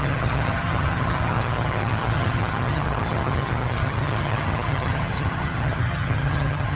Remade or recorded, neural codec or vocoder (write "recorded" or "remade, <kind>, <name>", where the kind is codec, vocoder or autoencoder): remade, vocoder, HiFi-GAN